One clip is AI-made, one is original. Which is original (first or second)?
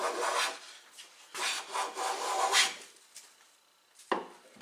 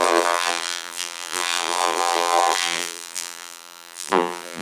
first